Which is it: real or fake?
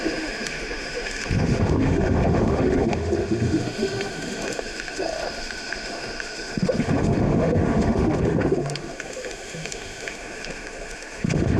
fake